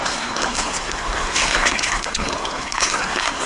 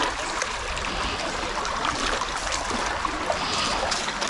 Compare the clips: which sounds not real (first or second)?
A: first